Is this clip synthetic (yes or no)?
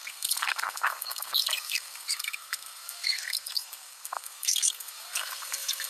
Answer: yes